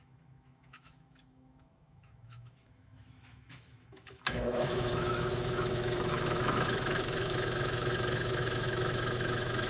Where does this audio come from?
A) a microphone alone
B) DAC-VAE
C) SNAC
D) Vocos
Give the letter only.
B